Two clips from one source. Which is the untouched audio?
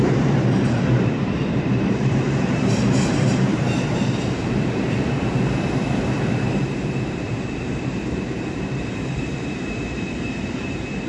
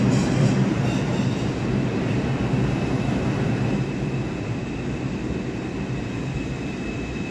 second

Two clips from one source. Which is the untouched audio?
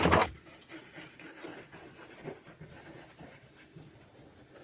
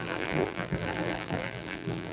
first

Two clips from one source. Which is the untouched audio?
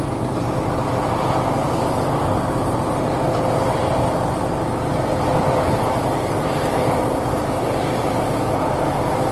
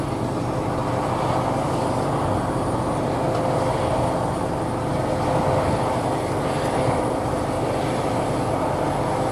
second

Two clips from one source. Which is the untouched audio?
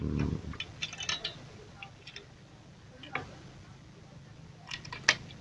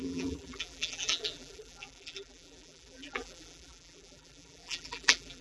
first